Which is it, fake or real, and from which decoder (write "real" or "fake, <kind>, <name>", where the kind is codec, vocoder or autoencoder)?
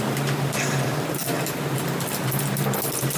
real